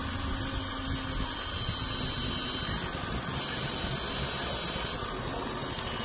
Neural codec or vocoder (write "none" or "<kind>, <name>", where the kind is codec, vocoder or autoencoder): none